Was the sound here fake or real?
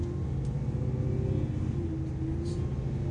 real